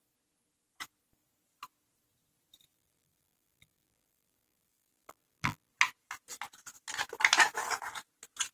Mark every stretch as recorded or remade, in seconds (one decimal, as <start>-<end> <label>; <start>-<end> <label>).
0.0-2.7 recorded; 2.7-5.7 remade; 5.7-8.5 recorded